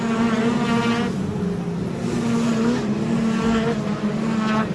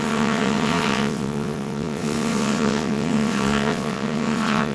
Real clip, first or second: first